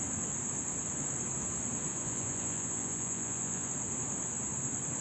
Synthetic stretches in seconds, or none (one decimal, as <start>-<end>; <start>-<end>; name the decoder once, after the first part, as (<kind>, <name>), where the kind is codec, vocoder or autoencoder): 1.9-3.7 (vocoder, Vocos)

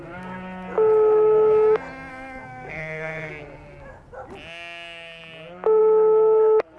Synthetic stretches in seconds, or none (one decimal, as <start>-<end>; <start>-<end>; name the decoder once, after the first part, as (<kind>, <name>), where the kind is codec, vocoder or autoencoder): 2.1-3.3 (codec, SNAC)

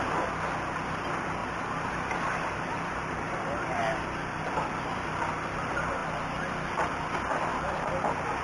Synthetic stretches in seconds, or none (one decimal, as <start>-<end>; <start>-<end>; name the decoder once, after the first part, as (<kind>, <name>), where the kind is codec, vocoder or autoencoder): 1.4-4.0 (vocoder, BigVGAN v2)

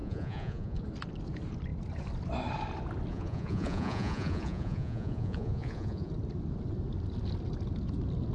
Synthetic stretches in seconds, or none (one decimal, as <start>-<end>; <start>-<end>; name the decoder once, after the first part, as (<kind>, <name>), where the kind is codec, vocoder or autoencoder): 0.0-0.8 (vocoder, Vocos); 3.1-6.1

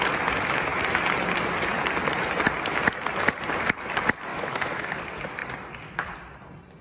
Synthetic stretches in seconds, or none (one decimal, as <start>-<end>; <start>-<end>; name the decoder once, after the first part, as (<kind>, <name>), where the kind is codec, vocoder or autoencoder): 4.3-5.0 (autoencoder, DAC-VAE)

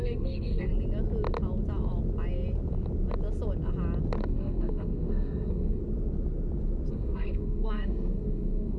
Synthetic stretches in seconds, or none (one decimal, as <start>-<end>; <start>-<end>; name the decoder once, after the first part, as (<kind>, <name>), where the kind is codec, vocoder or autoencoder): 0.0-0.7 (codec, SNAC); 4.2-5.8; 6.9-8.8